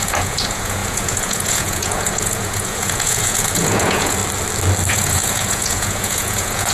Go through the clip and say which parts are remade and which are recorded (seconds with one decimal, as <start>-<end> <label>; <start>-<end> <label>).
0.0-4.2 remade; 4.2-4.9 recorded; 4.9-6.7 remade